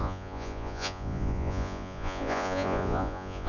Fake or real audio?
fake